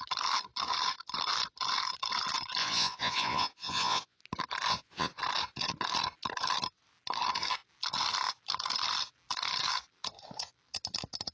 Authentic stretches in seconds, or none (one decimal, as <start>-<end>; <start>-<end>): 0.0-2.6; 4.2-4.7; 5.2-11.3